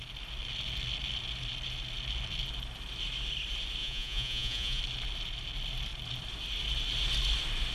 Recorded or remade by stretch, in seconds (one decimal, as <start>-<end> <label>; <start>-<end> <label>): 0.0-3.8 recorded; 3.8-4.8 remade; 4.8-7.7 recorded